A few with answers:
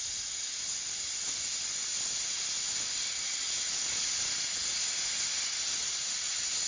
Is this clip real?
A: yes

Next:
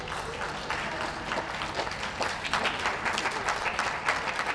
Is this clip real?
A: yes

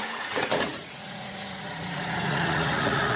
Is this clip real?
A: no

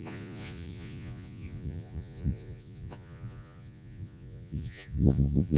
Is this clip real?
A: no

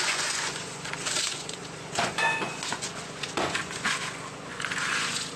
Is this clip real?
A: no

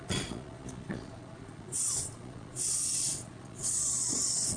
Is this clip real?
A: no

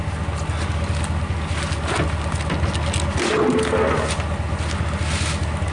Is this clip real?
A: yes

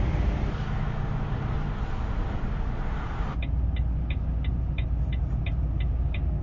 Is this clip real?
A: yes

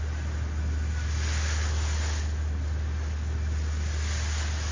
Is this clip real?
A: yes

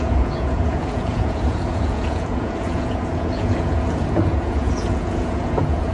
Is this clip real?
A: no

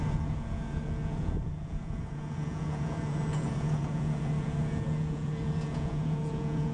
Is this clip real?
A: no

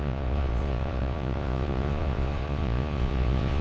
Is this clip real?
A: no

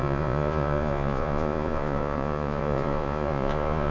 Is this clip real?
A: no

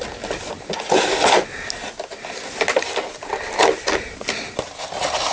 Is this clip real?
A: yes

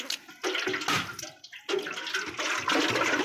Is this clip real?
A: yes